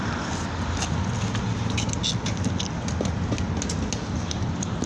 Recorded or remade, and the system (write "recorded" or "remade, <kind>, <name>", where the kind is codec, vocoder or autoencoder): recorded